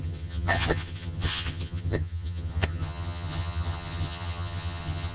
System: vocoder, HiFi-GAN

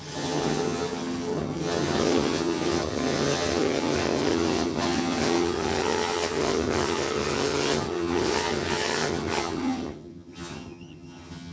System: vocoder, HiFi-GAN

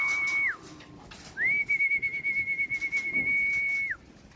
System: none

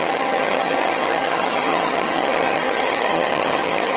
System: vocoder, HiFi-GAN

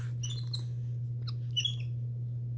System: none